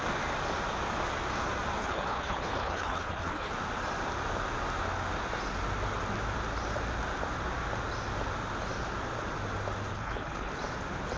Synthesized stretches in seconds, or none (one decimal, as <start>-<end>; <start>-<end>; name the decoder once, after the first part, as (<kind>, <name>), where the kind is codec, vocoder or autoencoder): 1.8-3.5 (codec, HILCodec); 9.9-10.5